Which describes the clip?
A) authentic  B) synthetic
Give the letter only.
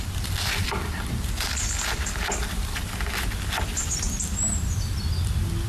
A